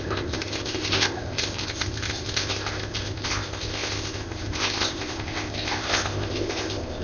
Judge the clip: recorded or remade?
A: remade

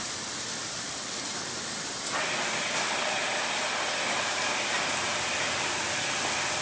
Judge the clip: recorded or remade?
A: recorded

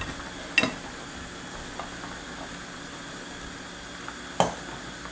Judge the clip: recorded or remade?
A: recorded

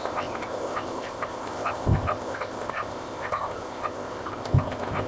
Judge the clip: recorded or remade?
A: remade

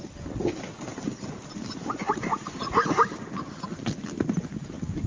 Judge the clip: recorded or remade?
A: recorded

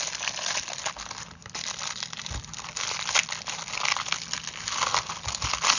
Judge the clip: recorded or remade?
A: recorded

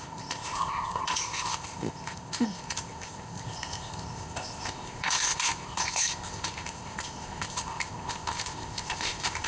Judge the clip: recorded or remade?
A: remade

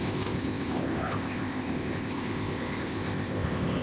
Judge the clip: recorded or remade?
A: remade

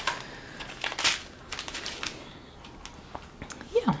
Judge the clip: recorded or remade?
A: recorded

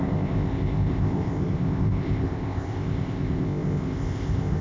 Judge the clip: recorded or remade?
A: remade